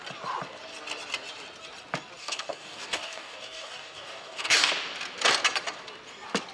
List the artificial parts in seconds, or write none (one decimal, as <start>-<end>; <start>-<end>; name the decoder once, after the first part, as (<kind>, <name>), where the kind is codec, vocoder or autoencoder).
2.2-4.7 (codec, DAC)